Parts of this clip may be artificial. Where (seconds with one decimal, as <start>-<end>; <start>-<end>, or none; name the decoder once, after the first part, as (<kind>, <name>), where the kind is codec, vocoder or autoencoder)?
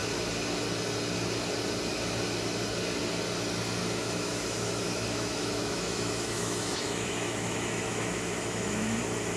3.8-9.0 (autoencoder, DAC-VAE)